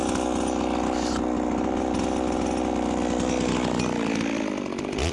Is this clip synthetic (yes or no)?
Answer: no